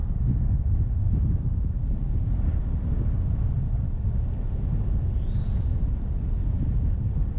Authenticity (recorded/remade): recorded